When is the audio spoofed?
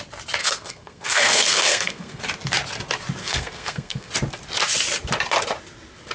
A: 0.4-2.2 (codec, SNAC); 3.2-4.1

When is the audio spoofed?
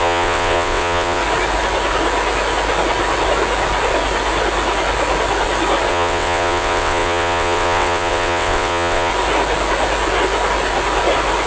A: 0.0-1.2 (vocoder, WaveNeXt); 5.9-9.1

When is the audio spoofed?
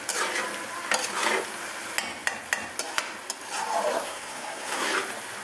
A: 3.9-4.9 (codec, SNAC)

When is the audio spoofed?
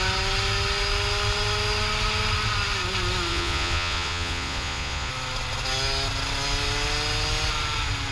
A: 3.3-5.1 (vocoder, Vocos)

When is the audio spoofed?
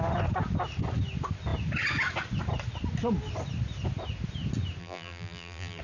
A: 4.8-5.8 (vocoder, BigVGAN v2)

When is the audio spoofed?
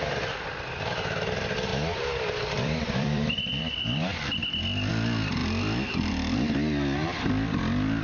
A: 1.7-3.6 (vocoder, BigVGAN v2)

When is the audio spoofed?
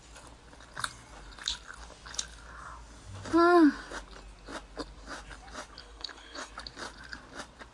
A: 5.8-6.5 (codec, HILCodec)